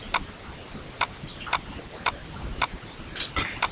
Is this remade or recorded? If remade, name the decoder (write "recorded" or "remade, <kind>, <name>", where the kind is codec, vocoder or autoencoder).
recorded